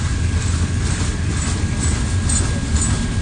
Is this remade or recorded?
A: recorded